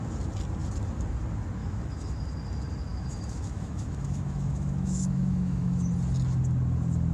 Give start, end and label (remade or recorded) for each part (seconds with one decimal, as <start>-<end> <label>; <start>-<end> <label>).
0.0-1.6 recorded; 1.6-2.2 remade; 2.2-2.9 recorded; 2.9-5.9 remade; 5.9-7.1 recorded